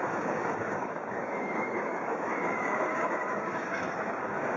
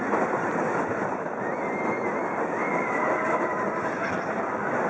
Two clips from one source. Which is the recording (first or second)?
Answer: second